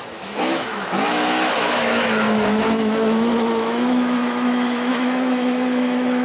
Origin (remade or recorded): remade